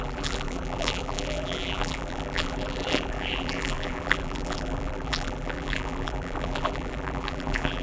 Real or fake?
fake